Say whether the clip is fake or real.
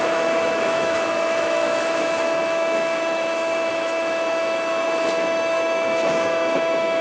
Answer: fake